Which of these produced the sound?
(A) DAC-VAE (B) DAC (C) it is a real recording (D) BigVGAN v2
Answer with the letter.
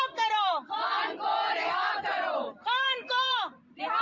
D